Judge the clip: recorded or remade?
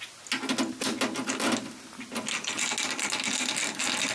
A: recorded